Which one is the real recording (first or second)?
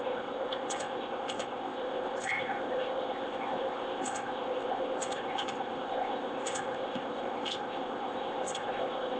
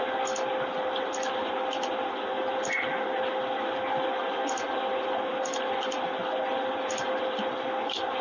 second